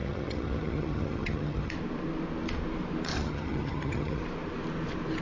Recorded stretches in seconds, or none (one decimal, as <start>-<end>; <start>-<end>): 1.7-3.1; 4.2-5.2